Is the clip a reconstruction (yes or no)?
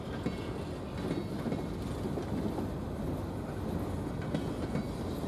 no